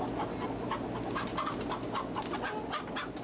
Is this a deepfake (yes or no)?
no